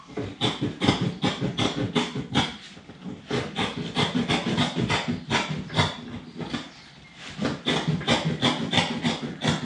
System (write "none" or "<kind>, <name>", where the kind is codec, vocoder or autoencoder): none